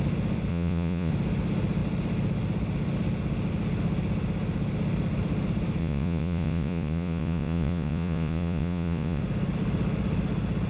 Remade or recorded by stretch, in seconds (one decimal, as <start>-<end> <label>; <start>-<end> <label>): 0.0-0.5 recorded; 0.5-1.1 remade; 1.1-5.8 recorded; 5.8-9.2 remade; 9.2-10.7 recorded